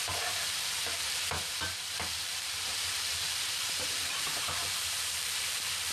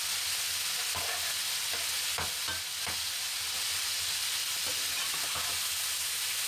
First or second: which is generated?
first